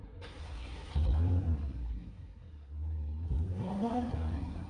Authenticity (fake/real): fake